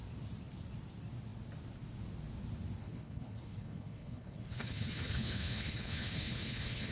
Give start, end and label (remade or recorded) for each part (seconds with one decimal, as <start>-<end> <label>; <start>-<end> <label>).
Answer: 0.0-2.8 recorded; 2.8-6.9 remade